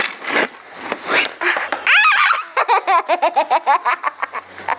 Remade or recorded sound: recorded